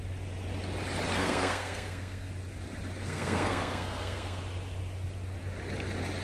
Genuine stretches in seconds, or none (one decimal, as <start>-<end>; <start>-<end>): 0.0-1.1; 2.3-3.0; 4.4-6.2